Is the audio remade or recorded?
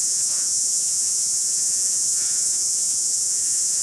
remade